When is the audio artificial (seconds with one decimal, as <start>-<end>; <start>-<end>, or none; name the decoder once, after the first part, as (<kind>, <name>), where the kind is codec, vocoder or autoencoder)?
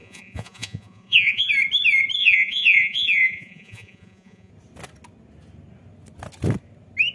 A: 0.0-1.5 (vocoder, Vocos); 2.2-4.5